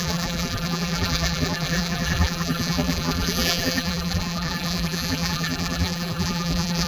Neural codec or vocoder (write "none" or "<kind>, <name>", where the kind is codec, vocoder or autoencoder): vocoder, BigVGAN v2